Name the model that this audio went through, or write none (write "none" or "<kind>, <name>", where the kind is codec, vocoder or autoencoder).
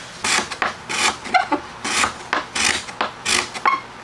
none